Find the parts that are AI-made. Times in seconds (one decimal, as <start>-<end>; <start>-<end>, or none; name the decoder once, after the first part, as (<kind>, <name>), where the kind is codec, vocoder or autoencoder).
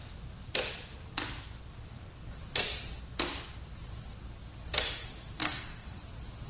5.4-6.0 (codec, SNAC)